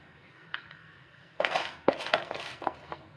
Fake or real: fake